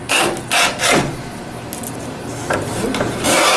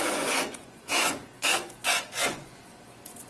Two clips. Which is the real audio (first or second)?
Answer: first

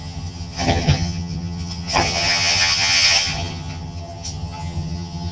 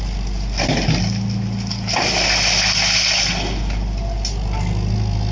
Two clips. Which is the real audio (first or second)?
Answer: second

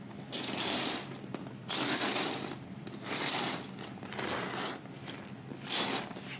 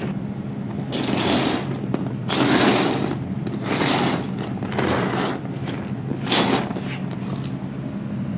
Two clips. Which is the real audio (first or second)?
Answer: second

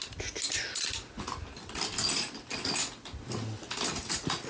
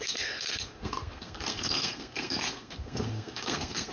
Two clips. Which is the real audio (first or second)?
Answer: first